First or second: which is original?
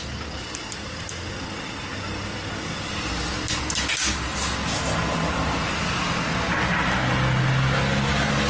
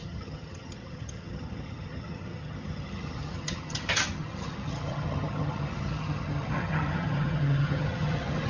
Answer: first